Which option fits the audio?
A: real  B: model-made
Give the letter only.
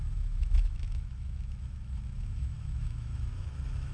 B